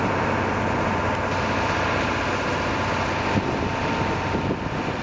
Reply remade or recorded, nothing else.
recorded